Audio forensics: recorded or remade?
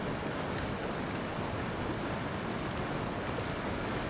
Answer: recorded